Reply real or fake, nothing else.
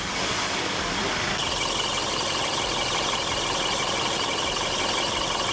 real